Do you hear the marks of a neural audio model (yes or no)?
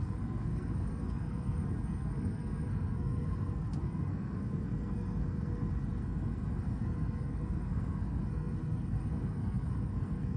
yes